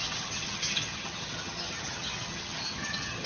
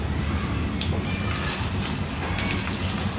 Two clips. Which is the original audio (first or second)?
second